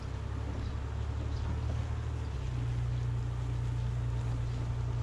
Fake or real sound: real